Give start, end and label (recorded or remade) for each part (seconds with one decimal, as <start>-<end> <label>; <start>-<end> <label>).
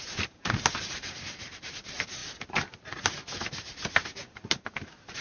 0.0-2.2 remade; 2.2-4.3 recorded; 4.3-5.2 remade